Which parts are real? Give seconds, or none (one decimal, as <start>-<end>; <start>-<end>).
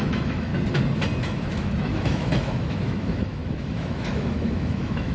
0.5-1.2